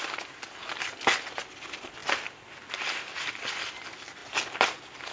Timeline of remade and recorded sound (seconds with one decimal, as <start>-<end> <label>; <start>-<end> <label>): 0.0-5.1 recorded